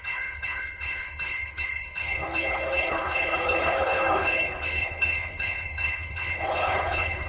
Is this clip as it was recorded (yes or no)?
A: no